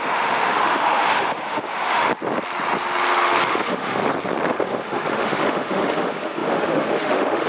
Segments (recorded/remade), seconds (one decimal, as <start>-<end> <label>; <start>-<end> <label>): 0.0-2.1 remade; 2.1-3.5 recorded; 3.5-4.0 remade; 4.0-4.5 recorded; 4.5-7.5 remade